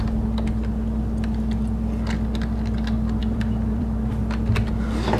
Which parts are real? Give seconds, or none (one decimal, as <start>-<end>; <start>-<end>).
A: 0.0-3.2; 4.2-5.2